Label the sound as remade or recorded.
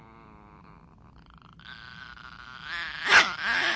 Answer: recorded